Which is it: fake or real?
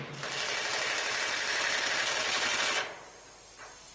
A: real